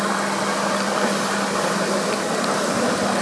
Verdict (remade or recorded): recorded